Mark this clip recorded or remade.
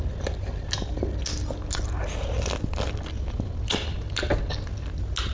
recorded